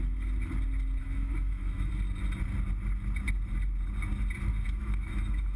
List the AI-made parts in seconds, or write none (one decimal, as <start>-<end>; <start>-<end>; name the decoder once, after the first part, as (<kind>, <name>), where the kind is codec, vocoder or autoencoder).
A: 1.0-1.9 (autoencoder, DAC-VAE); 4.5-5.6